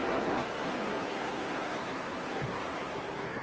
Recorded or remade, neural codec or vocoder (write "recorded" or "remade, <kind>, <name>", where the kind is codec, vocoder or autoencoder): remade, codec, SNAC